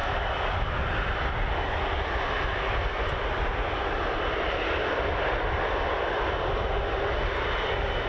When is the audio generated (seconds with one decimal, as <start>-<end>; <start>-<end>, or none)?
none